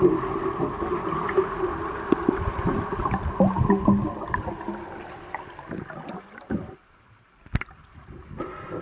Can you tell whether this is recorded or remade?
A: recorded